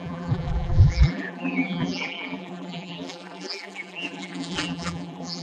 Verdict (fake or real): fake